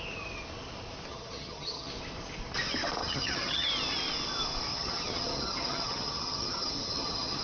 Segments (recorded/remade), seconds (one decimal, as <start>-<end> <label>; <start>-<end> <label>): 0.0-1.1 recorded; 1.1-1.9 remade; 1.9-3.0 recorded; 3.0-3.7 remade; 3.7-4.7 recorded; 4.7-7.4 remade